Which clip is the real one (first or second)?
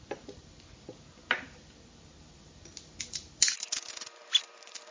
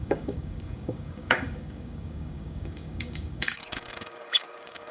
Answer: first